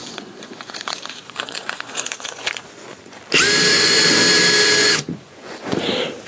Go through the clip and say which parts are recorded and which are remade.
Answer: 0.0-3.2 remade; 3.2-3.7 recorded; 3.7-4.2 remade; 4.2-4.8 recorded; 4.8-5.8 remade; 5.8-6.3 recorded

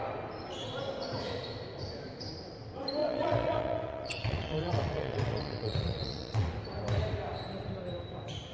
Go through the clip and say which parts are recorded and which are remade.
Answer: 0.0-3.0 recorded; 3.0-6.5 remade; 6.5-8.5 recorded

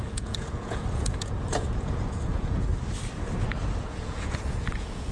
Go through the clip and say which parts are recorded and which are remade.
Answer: 0.0-2.7 remade; 2.7-3.8 recorded; 3.8-5.1 remade

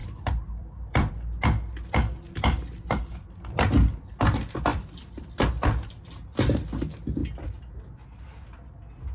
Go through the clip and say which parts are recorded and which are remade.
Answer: 0.0-1.1 remade; 1.1-4.7 recorded; 4.7-5.5 remade; 5.5-9.1 recorded